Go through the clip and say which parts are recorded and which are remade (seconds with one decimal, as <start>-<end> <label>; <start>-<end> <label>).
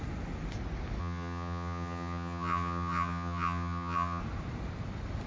0.0-1.0 recorded; 1.0-4.2 remade; 4.2-5.3 recorded